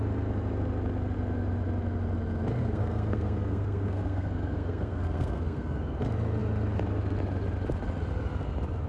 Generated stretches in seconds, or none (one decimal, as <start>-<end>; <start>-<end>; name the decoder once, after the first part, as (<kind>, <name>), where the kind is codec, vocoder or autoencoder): 2.6-6.0 (codec, SNAC)